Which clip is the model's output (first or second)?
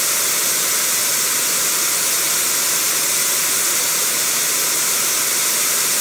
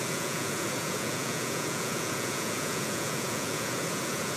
second